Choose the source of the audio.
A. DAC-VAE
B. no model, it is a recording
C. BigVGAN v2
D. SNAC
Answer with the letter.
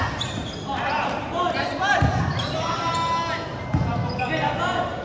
B